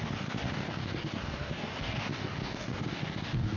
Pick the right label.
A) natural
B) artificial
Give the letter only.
B